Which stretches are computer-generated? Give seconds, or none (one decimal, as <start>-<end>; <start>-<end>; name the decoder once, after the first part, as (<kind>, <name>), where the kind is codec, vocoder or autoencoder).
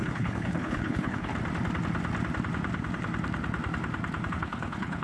0.0-1.3 (codec, HILCodec); 4.3-5.0